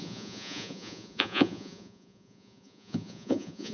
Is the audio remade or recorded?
remade